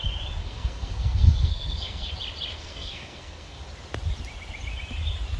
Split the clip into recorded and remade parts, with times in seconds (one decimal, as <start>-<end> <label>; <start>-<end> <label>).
0.0-0.4 recorded; 0.4-2.1 remade; 2.1-2.5 recorded; 2.5-3.6 remade; 3.6-5.4 recorded